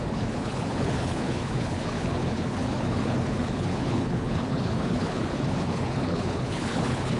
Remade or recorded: remade